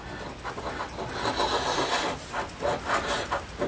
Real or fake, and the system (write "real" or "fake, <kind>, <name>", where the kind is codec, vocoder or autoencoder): real